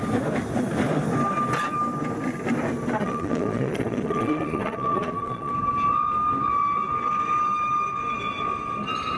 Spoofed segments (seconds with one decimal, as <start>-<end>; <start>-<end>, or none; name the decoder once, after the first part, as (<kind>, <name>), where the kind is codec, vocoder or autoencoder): 3.0-5.5 (vocoder, Vocos)